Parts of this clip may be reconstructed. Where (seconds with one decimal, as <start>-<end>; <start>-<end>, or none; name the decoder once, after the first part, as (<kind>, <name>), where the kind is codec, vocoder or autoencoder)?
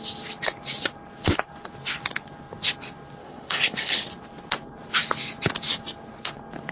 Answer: 3.2-4.0 (codec, HILCodec)